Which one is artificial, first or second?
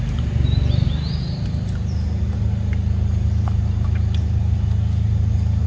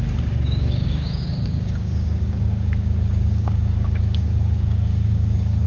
second